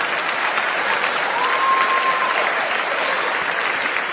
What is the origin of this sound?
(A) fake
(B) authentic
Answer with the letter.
B